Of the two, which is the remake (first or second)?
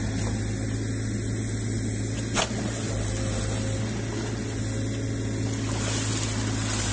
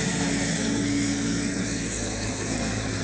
second